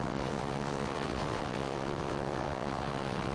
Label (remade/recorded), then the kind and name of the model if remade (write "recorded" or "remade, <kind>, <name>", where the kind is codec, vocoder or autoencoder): remade, vocoder, WaveNeXt